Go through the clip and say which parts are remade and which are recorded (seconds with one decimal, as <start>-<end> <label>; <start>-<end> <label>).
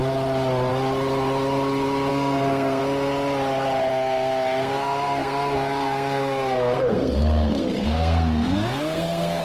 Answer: 0.0-2.1 recorded; 2.1-2.8 remade; 2.8-3.9 recorded; 3.9-9.4 remade